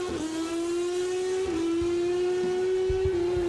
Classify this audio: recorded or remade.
recorded